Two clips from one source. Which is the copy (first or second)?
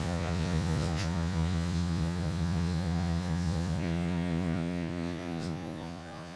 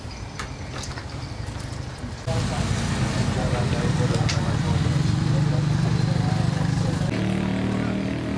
first